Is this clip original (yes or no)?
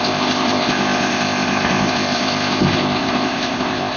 no